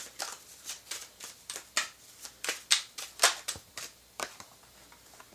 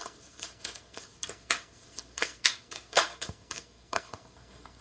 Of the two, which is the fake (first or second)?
second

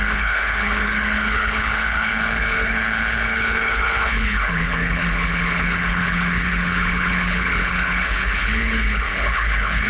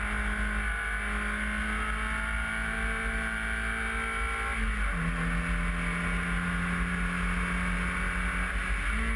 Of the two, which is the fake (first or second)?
first